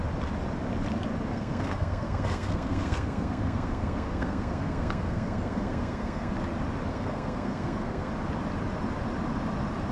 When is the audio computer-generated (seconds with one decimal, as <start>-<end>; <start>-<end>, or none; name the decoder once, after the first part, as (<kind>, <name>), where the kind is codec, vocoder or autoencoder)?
1.3-6.3 (codec, SNAC); 6.9-8.1